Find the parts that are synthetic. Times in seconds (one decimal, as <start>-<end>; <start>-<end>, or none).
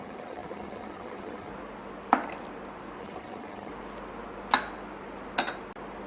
0.0-1.5; 3.0-3.7